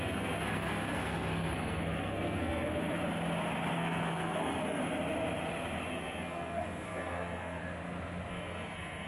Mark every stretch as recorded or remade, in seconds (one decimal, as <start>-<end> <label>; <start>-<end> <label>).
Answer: 0.0-3.0 remade; 3.0-3.7 recorded; 3.7-4.8 remade; 4.8-5.9 recorded; 5.9-7.6 remade; 7.6-8.3 recorded; 8.3-9.1 remade

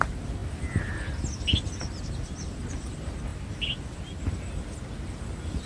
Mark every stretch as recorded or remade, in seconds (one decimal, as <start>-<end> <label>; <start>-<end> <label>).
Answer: 0.0-5.7 recorded

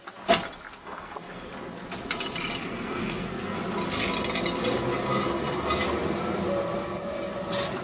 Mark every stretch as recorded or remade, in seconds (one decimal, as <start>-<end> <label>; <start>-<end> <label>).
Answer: 0.0-0.8 recorded; 0.8-1.5 remade; 1.5-2.6 recorded; 2.6-3.6 remade; 3.6-7.8 recorded

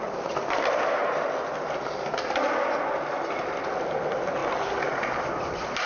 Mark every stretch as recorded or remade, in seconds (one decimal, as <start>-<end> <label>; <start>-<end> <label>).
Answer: 0.0-5.9 recorded

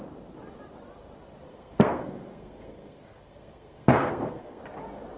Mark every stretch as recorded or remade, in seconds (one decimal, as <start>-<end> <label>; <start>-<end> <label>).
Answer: 0.0-1.5 recorded; 1.5-4.6 remade; 4.6-5.2 recorded

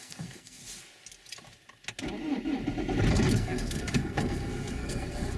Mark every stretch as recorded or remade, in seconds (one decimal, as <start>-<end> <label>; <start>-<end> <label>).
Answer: 0.0-0.6 remade; 0.6-3.1 recorded; 3.1-5.4 remade